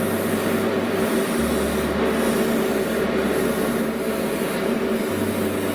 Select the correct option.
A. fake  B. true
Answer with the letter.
B